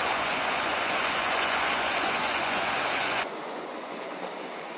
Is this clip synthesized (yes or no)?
yes